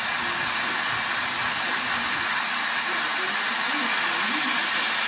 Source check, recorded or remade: recorded